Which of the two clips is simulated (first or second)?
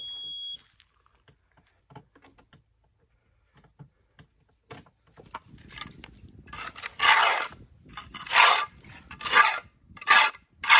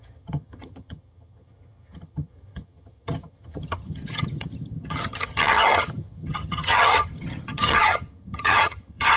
second